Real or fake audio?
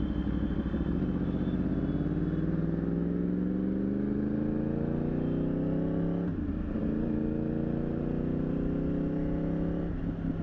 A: real